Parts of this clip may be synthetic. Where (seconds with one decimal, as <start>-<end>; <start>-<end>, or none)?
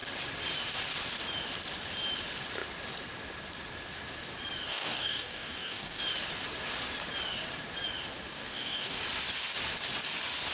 4.7-6.0; 8.3-9.0